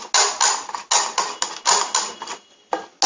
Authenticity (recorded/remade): recorded